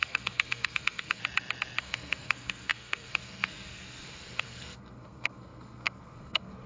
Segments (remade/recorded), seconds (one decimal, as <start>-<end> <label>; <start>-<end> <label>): 0.0-1.2 remade; 1.2-1.8 recorded; 1.8-6.7 remade